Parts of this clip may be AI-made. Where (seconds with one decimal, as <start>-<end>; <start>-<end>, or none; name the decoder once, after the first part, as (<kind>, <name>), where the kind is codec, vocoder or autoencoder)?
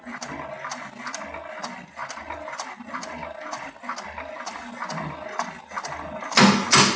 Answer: none